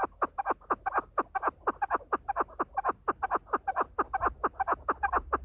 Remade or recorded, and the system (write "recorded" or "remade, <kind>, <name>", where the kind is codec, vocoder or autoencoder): recorded